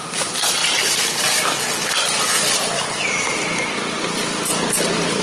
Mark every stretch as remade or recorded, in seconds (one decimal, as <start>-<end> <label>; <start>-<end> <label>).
0.0-5.2 recorded